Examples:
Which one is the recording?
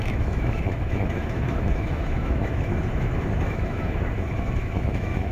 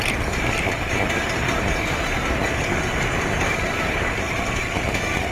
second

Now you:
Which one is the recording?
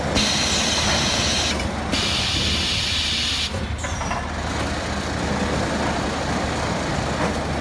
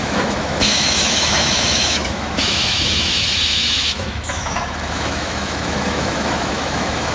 first